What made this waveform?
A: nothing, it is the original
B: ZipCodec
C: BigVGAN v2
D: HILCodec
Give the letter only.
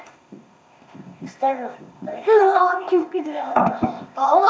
B